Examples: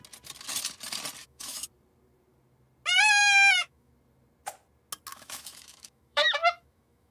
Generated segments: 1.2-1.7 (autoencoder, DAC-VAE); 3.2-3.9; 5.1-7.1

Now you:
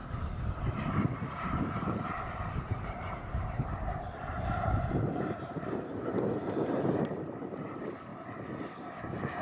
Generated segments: 0.6-8.1 (vocoder, BigVGAN v2); 9.0-9.4

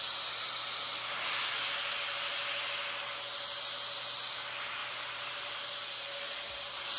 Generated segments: 4.8-5.6 (vocoder, BigVGAN v2)

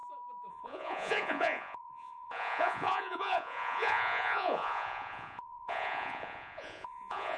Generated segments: 0.5-7.4 (vocoder, Vocos)

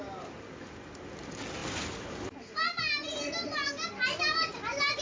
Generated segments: none

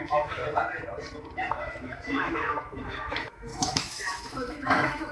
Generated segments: 0.0-0.4 (autoencoder, DAC-VAE); 1.5-5.1

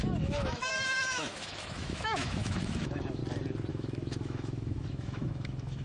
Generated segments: 0.0-3.2 (autoencoder, DAC-VAE); 3.7-5.8

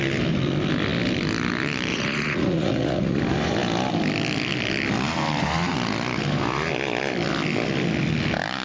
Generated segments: 1.9-3.2 (vocoder, Vocos)